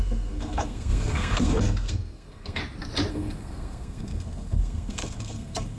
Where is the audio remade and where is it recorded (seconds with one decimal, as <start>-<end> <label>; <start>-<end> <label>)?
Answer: 0.0-2.6 remade; 2.6-3.1 recorded; 3.1-5.8 remade